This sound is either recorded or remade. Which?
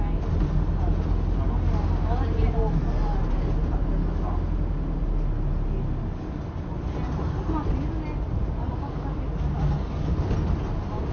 recorded